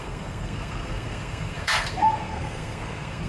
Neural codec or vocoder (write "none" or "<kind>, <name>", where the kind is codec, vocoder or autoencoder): codec, SNAC